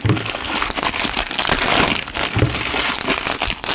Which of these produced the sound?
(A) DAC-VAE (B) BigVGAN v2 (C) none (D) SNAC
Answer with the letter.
C